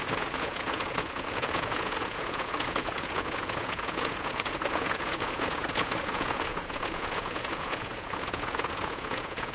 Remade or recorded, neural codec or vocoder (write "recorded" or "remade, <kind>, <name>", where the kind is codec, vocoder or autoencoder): remade, vocoder, Vocos